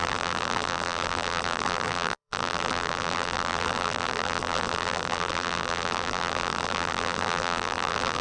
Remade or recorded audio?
remade